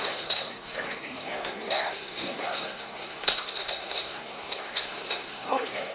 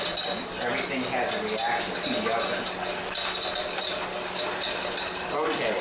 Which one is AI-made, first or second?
first